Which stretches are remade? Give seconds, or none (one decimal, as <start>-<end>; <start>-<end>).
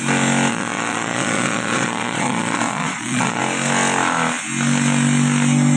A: 0.5-3.4